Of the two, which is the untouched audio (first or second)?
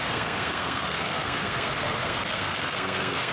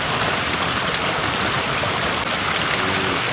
second